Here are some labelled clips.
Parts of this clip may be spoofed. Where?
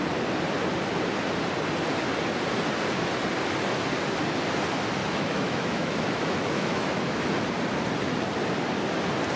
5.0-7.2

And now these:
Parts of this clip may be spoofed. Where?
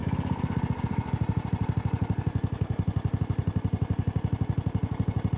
none